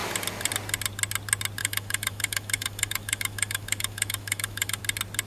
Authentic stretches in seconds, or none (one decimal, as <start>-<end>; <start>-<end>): 0.0-1.6; 4.8-5.3

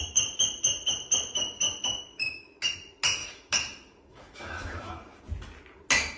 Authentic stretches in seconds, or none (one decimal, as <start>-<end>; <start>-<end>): 0.0-2.1; 2.7-3.2; 5.2-6.2

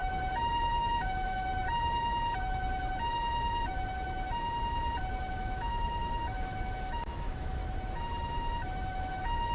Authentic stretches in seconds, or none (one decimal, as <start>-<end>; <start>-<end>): 0.0-0.8; 1.5-5.3; 7.6-9.0

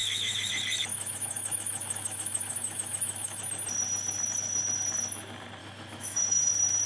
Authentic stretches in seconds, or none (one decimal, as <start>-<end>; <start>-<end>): 0.5-0.9; 3.4-5.6; 6.5-6.9

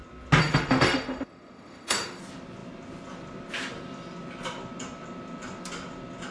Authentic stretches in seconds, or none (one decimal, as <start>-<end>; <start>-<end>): 0.0-0.4; 2.2-6.3